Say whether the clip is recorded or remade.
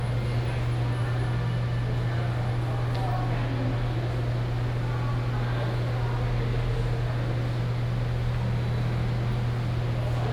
recorded